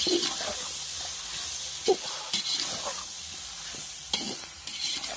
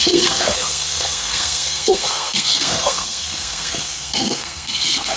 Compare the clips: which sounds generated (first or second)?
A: second